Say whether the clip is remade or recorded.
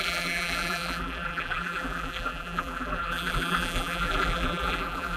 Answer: remade